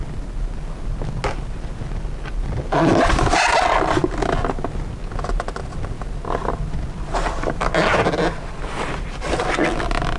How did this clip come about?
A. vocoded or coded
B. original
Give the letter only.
B